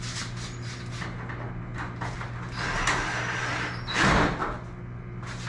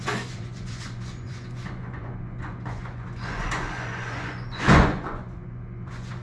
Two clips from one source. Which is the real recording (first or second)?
first